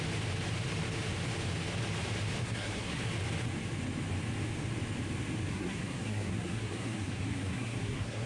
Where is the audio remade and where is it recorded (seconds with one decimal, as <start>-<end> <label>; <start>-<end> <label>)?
0.0-2.4 recorded; 2.4-3.0 remade; 3.0-5.5 recorded; 5.5-8.3 remade

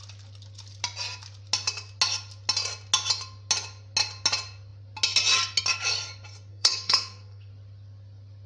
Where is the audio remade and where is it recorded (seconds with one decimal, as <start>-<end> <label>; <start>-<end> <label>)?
0.0-6.5 recorded; 6.5-7.5 remade; 7.5-8.5 recorded

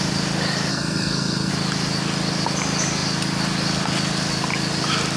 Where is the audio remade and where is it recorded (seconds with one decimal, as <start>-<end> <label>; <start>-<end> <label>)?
0.0-0.7 recorded; 0.7-1.5 remade; 1.5-5.2 recorded

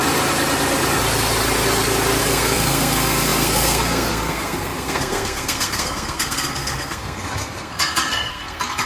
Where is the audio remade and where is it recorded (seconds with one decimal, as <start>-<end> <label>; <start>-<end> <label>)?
0.0-2.2 recorded; 2.2-8.9 remade